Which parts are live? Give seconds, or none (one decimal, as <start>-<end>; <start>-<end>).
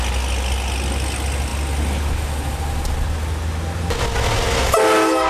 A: 0.0-5.3